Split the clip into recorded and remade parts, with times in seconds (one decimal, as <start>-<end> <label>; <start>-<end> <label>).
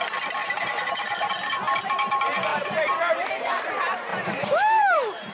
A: 0.0-0.4 recorded; 0.4-1.3 remade; 1.3-2.5 recorded; 2.5-3.6 remade; 3.6-4.1 recorded; 4.1-5.3 remade